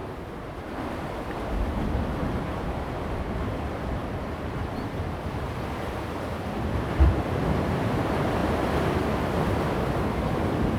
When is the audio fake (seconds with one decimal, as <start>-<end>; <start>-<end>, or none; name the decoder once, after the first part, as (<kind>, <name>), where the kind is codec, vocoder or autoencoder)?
0.6-8.4 (vocoder, BigVGAN v2); 10.2-10.8